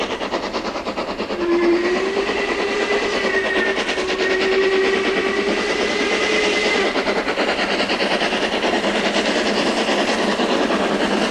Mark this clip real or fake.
real